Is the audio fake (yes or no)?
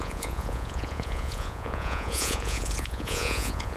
yes